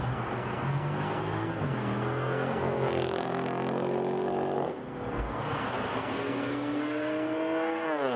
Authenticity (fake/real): fake